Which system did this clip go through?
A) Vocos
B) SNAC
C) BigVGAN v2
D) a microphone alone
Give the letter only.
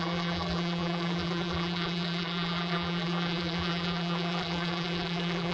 C